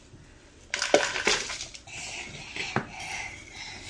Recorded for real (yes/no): yes